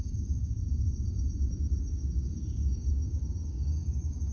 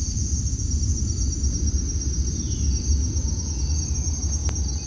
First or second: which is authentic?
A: second